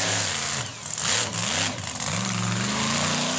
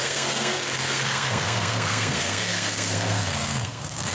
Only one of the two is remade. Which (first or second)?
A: second